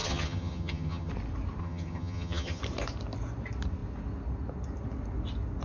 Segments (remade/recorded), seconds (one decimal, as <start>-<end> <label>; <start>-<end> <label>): 0.0-1.1 remade; 1.1-1.6 recorded; 1.6-2.6 remade; 2.6-5.6 recorded